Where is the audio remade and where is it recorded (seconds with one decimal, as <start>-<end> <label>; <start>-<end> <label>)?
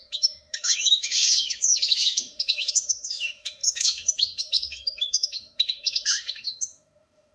0.0-7.3 remade